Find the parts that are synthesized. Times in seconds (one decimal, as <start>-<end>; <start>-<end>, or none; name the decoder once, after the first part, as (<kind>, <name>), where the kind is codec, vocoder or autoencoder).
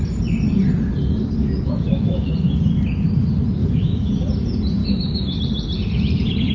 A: 1.4-2.3 (autoencoder, DAC-VAE); 3.6-4.1; 4.8-5.4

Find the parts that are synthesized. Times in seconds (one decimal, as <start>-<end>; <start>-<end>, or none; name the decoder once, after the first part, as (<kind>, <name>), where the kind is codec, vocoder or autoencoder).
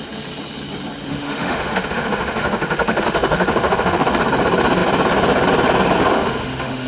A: 1.1-4.2 (autoencoder, DAC-VAE); 6.1-6.9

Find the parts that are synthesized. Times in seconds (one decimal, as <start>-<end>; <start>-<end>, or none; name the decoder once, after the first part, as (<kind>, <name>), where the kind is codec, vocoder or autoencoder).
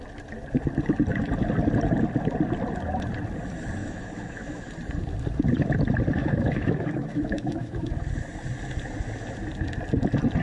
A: 3.8-4.7 (autoencoder, DAC-VAE); 6.2-7.9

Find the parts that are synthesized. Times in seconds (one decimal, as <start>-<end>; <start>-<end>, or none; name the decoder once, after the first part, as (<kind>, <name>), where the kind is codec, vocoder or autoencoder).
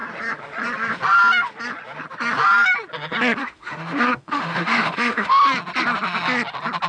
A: 3.4-5.3 (autoencoder, DAC-VAE)